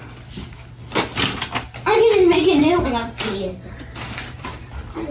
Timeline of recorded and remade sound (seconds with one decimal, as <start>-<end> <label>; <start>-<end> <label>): 0.0-2.6 recorded; 2.6-5.1 remade